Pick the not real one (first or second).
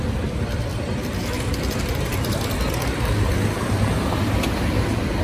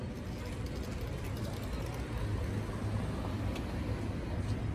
first